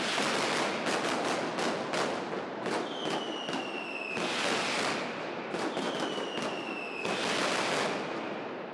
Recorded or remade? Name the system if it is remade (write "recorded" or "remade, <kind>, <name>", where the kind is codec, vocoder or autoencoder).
recorded